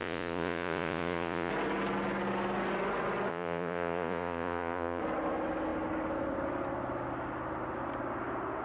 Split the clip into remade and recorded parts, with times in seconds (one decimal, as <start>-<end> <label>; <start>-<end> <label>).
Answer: 0.0-1.5 remade; 1.5-3.3 recorded; 3.3-5.0 remade; 5.0-8.6 recorded